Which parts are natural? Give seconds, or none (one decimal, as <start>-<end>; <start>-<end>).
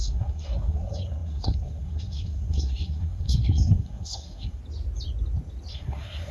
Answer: 4.6-5.7